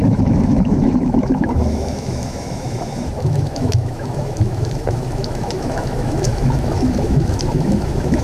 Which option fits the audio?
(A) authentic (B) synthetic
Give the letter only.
B